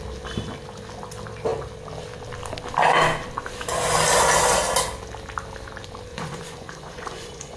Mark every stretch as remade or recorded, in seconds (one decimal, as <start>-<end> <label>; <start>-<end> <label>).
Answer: 0.0-6.1 recorded; 6.1-7.6 remade